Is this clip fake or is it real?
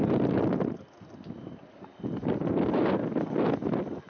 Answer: real